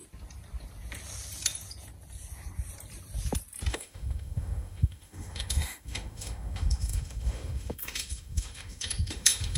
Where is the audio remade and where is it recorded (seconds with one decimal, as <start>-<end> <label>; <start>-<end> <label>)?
0.0-3.7 recorded; 3.7-9.6 remade